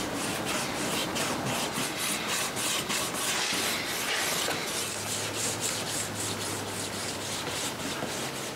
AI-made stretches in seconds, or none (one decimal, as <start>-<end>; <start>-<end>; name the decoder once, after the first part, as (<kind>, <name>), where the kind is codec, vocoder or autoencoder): none